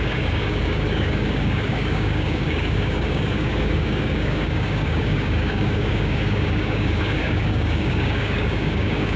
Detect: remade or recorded remade